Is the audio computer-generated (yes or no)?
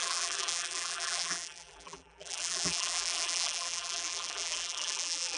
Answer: yes